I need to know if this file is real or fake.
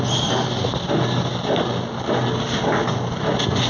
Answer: real